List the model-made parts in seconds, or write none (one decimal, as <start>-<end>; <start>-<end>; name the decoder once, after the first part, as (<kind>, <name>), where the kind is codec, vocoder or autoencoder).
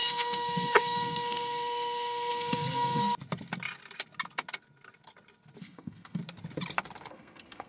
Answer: 0.0-3.0 (codec, SNAC); 5.6-6.2; 7.1-7.7